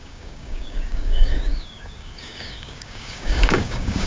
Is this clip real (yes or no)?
no